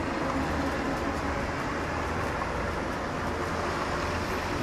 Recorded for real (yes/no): yes